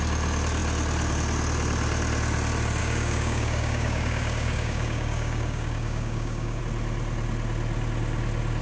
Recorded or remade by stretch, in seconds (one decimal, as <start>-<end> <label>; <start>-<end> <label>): 0.0-2.8 recorded; 2.8-6.6 remade; 6.6-8.6 recorded